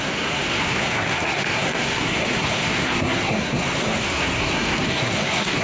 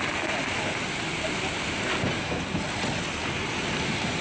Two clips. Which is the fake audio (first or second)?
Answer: first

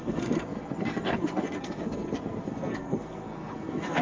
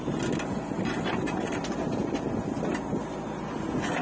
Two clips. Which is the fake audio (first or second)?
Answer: first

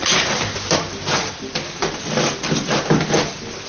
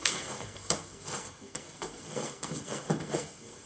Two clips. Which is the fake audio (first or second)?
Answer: second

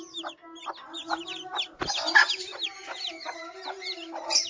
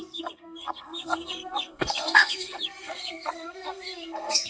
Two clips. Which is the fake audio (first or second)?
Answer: second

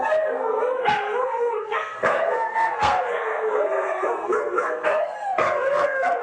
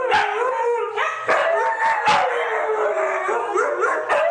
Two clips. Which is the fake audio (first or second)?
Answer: first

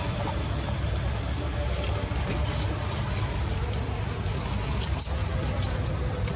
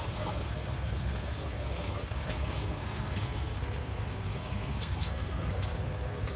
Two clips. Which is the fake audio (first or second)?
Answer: second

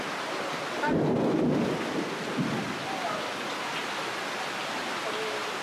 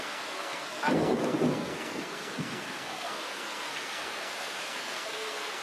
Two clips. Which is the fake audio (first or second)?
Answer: second